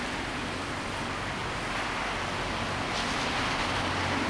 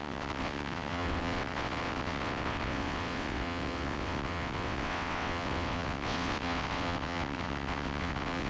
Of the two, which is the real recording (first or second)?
first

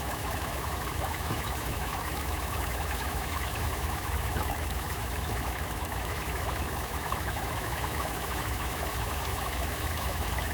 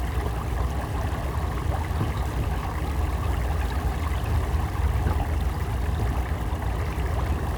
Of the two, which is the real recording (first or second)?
second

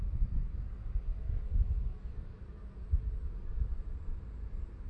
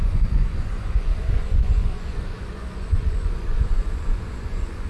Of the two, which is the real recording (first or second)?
first